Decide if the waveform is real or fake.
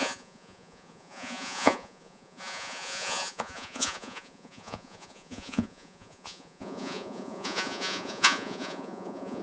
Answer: fake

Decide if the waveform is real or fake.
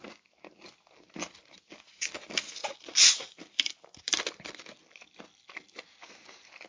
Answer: real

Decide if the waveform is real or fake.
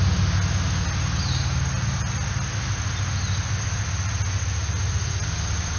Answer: real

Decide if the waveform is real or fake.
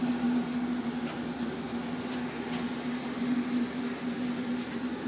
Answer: real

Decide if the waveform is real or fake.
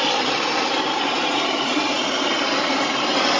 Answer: fake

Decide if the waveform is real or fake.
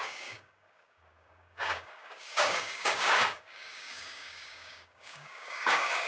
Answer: fake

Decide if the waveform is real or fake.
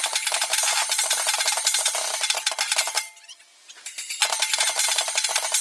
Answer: real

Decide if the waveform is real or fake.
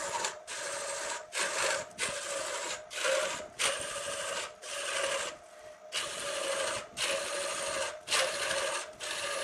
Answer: real